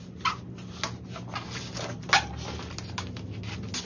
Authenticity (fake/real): real